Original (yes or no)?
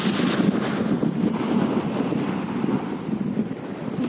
yes